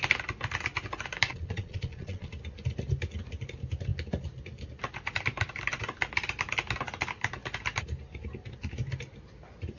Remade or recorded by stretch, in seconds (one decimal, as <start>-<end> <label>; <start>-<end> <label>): 0.0-1.3 recorded; 1.3-2.3 remade; 2.3-9.8 recorded